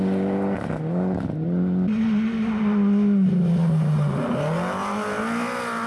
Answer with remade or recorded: recorded